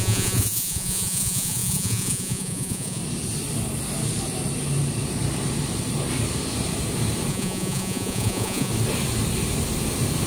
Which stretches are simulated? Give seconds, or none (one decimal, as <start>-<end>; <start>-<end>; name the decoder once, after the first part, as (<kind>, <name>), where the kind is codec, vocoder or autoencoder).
0.0-3.0 (vocoder, Vocos); 7.3-8.7